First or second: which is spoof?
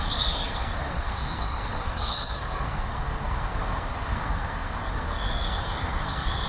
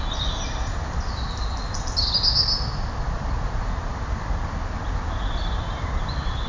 first